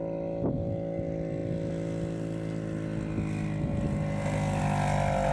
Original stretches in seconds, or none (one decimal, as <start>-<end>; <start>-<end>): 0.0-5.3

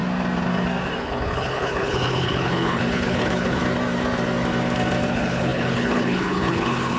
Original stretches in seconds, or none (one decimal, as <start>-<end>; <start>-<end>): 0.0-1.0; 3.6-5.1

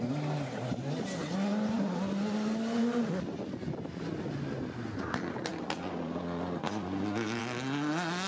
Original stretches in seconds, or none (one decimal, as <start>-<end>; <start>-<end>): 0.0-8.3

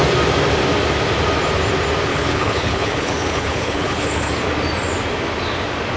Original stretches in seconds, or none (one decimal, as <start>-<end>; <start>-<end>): 0.0-2.1; 4.3-6.0

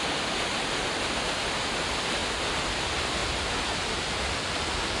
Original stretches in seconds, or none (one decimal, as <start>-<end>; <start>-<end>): 0.0-5.0

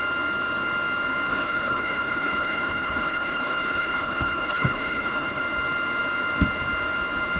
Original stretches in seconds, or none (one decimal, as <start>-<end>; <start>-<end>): 0.0-1.3; 5.4-7.4